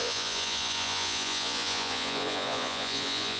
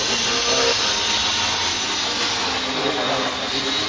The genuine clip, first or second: second